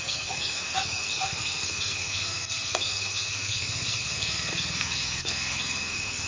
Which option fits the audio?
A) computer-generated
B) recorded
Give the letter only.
A